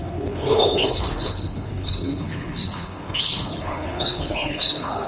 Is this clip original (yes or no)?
no